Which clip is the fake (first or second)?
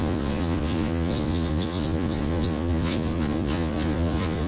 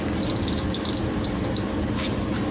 first